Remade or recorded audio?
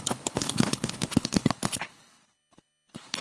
remade